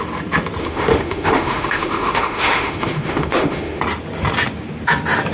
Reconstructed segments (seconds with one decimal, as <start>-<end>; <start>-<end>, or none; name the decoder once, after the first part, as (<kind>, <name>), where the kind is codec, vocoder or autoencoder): 0.6-3.8 (autoencoder, DAC-VAE)